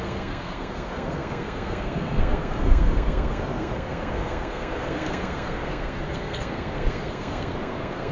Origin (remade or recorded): remade